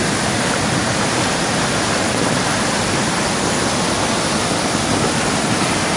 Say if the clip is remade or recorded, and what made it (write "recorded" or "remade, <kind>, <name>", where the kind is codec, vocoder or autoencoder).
recorded